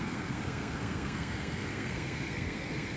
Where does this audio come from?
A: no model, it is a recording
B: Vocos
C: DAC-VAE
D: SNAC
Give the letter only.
D